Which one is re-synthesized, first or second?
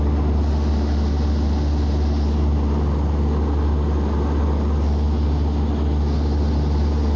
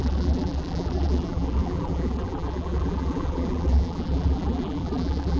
second